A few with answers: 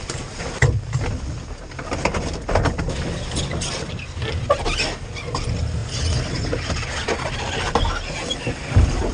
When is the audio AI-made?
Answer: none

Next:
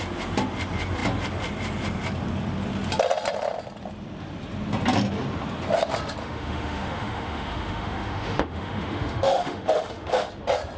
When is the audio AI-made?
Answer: 6.2-10.3 (autoencoder, DAC-VAE)